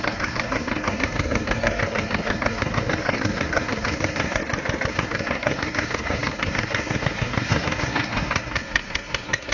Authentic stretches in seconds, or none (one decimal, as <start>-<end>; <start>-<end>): 4.4-4.9